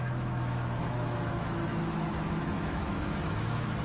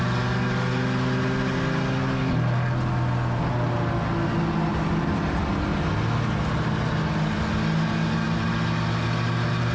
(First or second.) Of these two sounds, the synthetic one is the first